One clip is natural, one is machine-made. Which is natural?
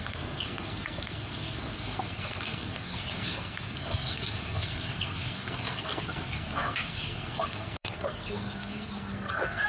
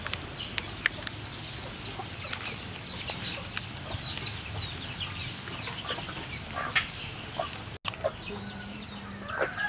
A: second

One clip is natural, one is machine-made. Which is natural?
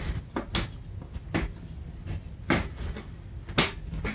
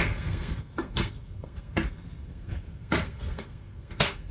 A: first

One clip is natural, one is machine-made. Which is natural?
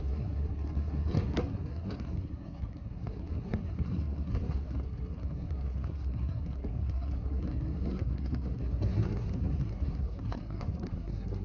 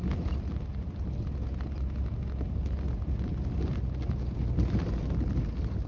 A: second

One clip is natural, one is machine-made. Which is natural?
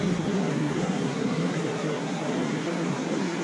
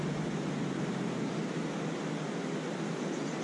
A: second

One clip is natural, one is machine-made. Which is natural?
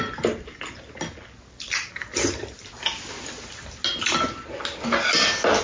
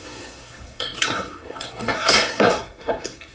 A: first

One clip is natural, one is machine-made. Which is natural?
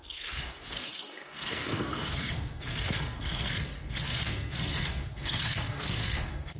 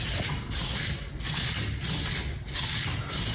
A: second